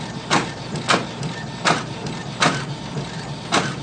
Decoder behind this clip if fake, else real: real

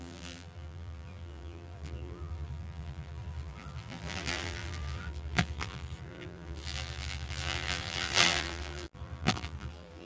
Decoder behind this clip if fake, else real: fake, vocoder, BigVGAN v2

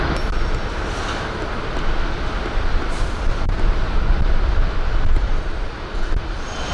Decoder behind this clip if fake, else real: real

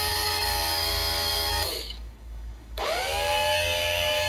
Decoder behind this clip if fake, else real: fake, codec, DAC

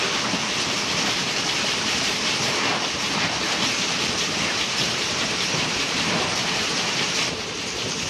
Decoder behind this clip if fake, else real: fake, vocoder, BigVGAN v2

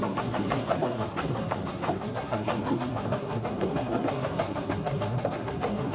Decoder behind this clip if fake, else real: fake, codec, SNAC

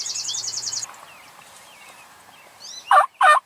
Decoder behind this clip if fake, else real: fake, vocoder, BigVGAN v2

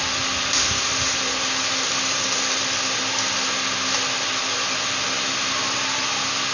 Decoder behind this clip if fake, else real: real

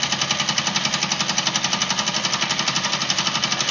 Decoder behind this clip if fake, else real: real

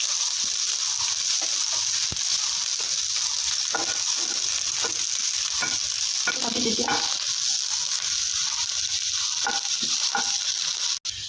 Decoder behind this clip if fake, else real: real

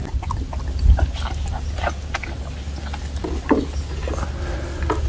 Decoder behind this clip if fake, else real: real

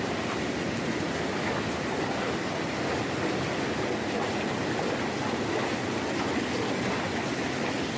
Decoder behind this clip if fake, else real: real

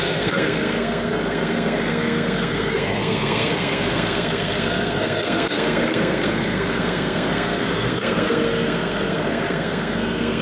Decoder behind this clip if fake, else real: fake, codec, SNAC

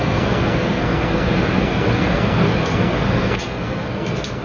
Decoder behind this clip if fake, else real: fake, codec, SNAC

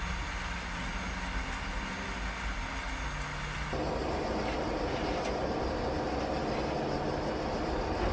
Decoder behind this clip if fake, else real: real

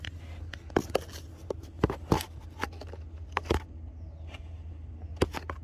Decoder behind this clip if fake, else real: real